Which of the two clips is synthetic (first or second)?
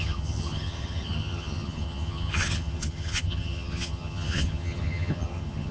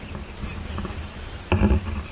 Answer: first